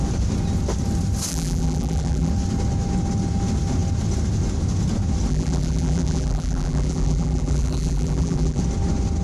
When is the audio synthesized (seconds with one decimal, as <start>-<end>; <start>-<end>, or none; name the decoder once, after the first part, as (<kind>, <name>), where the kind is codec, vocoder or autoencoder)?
1.3-2.3 (vocoder, BigVGAN v2); 5.3-8.6